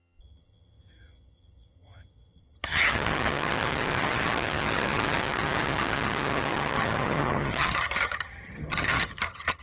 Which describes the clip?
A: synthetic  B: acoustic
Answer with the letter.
A